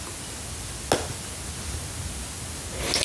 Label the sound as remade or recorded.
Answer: recorded